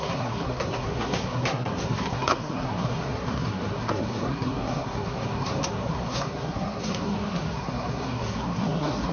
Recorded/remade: remade